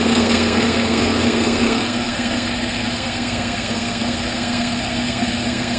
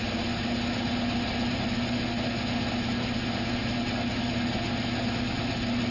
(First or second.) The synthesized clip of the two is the first